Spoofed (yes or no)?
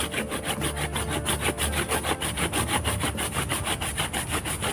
no